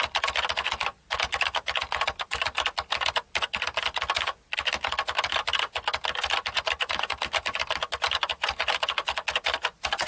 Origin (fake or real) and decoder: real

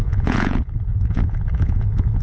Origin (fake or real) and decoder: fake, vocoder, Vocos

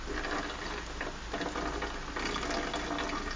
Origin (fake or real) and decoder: real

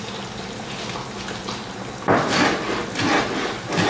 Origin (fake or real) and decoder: real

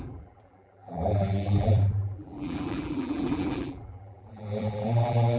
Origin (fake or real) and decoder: fake, vocoder, BigVGAN v2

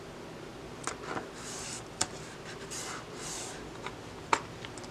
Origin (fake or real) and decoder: real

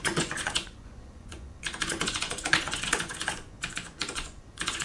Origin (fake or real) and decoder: fake, vocoder, Vocos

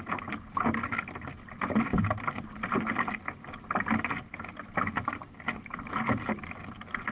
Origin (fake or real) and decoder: real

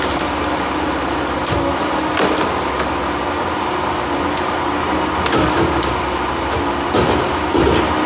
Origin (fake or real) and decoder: real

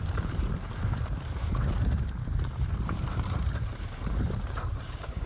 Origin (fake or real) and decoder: fake, vocoder, BigVGAN v2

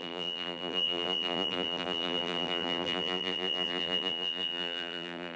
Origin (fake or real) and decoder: fake, vocoder, BigVGAN v2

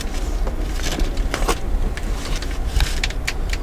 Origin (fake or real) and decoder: fake, vocoder, BigVGAN v2